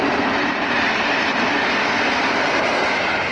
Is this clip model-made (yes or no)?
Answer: no